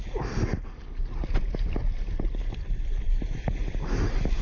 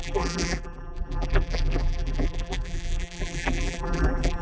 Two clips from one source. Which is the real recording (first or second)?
first